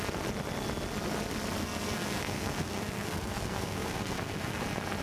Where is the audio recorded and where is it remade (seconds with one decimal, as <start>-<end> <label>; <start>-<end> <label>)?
0.0-1.6 recorded; 1.6-4.6 remade; 4.6-5.0 recorded